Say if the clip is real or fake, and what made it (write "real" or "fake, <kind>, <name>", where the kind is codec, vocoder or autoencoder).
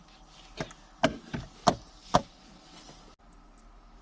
real